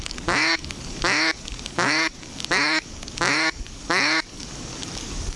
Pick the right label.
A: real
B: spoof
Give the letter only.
B